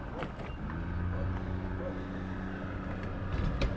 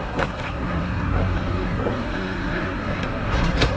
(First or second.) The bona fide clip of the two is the first